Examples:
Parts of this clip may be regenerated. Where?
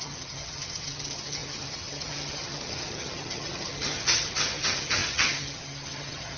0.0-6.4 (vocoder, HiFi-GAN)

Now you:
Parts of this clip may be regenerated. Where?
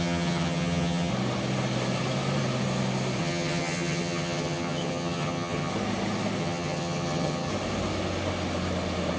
0.0-1.1 (vocoder, HiFi-GAN); 3.2-5.7; 6.4-7.5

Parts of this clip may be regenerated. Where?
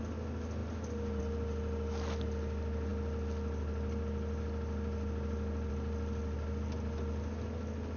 none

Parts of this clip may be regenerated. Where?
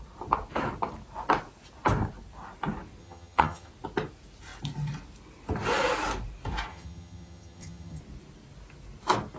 3.0-3.7 (vocoder, HiFi-GAN); 6.7-8.0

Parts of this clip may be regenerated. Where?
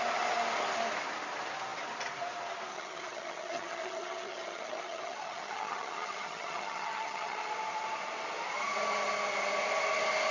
2.7-7.5 (vocoder, HiFi-GAN)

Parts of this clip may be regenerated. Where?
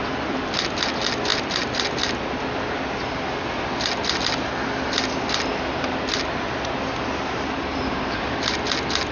none